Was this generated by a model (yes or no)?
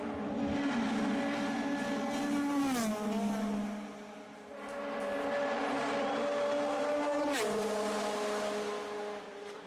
no